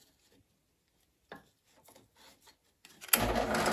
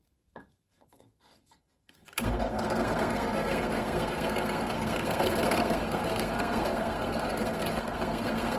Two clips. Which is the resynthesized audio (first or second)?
second